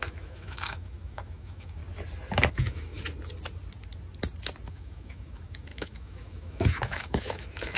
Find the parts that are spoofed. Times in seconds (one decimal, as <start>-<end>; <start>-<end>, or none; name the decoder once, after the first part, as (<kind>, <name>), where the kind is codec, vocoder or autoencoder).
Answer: 0.0-1.8 (autoencoder, DAC-VAE); 2.5-2.9; 4.7-7.8